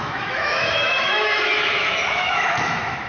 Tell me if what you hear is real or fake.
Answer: fake